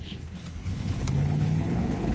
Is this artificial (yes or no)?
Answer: yes